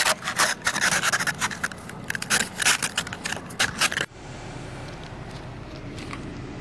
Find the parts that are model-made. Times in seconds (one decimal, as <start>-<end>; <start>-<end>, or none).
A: none